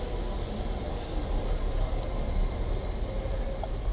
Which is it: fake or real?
real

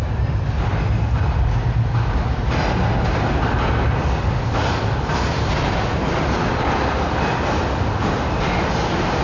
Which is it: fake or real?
real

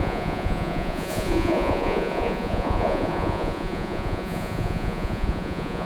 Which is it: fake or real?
fake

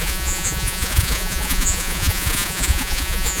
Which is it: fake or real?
fake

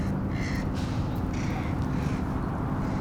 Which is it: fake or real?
real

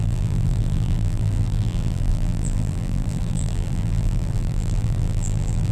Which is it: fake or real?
fake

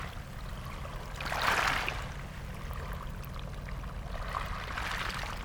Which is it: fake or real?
real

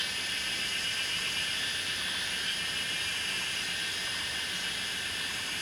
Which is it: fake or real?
real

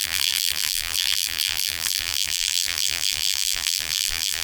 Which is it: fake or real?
fake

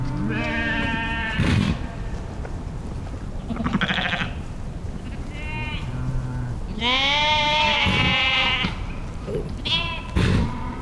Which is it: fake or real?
real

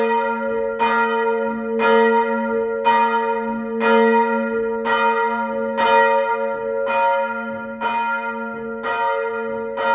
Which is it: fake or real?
real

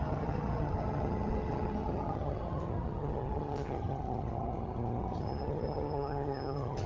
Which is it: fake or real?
fake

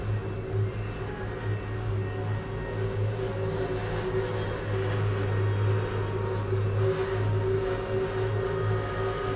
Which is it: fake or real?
real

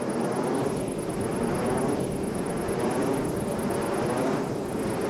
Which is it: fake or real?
real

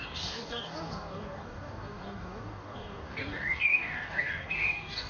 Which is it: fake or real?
fake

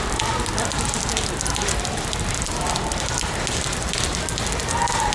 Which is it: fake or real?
real